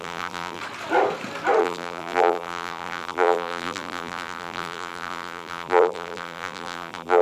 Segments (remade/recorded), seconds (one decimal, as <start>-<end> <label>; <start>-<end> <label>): 0.0-0.6 remade; 0.6-1.6 recorded; 1.6-7.2 remade